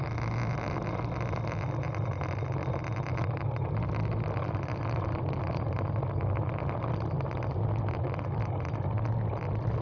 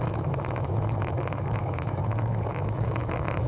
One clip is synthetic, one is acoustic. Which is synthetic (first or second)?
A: second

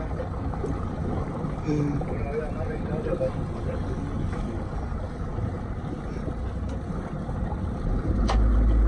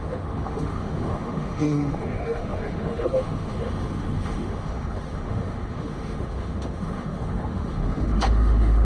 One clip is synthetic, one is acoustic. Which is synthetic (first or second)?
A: second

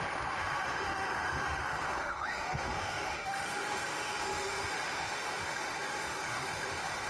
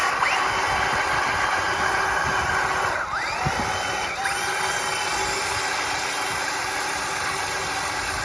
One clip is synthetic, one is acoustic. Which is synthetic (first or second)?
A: first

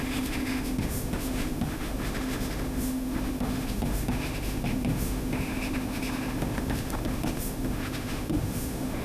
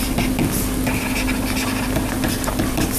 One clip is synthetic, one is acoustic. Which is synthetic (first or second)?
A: first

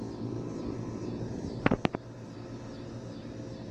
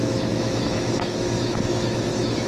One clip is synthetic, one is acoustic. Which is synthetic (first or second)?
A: second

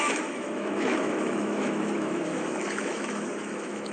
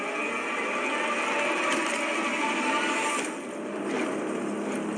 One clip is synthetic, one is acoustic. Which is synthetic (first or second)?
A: first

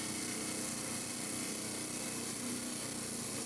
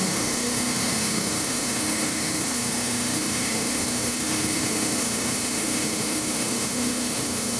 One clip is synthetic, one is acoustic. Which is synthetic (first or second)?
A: second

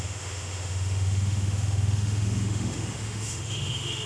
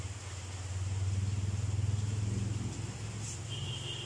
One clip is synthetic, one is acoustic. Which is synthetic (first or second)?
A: first